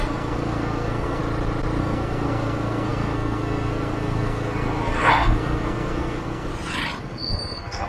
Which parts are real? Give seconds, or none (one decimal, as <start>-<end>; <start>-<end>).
1.2-1.8; 6.5-7.0